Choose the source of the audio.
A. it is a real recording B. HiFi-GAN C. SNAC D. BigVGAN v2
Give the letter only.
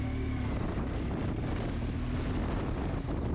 A